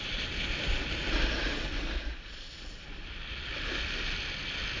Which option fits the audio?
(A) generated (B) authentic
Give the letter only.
B